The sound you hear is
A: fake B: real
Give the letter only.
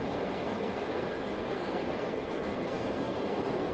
A